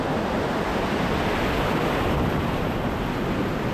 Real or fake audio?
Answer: real